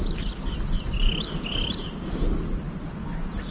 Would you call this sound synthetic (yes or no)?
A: no